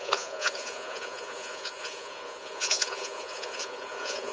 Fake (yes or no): yes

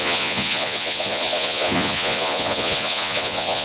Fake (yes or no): yes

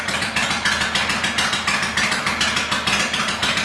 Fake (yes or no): no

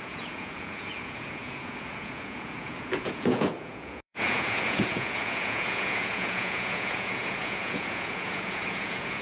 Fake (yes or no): yes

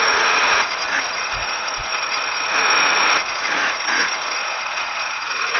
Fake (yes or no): yes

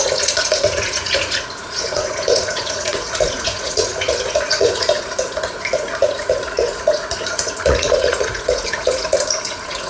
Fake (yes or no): yes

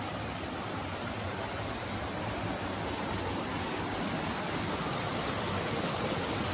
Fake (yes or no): no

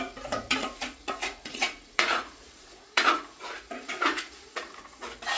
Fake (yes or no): yes